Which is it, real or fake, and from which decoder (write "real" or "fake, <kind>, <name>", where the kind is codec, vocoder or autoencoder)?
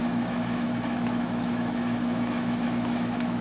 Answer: fake, autoencoder, DAC-VAE